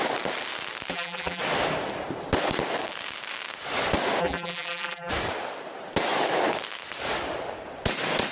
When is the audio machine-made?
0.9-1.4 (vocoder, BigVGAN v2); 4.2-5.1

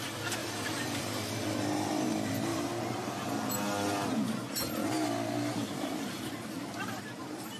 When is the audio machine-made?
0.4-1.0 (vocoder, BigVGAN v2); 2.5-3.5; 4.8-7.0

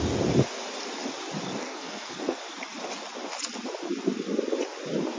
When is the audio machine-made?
1.6-2.4 (codec, SNAC)